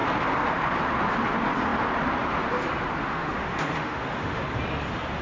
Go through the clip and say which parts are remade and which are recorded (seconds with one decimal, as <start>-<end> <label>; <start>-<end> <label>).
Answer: 0.0-3.0 recorded; 3.0-4.4 remade; 4.4-5.2 recorded